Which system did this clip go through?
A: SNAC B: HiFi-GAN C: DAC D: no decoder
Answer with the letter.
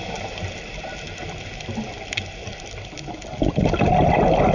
D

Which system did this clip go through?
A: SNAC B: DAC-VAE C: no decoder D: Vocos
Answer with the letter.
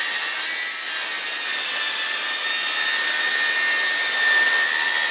C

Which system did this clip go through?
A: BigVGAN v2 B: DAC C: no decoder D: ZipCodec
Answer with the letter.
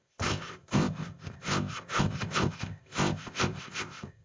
D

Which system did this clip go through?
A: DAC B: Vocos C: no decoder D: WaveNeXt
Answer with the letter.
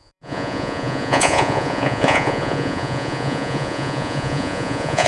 B